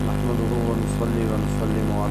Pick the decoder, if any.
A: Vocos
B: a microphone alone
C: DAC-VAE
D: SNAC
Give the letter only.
B